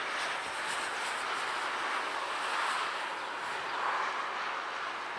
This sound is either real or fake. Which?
real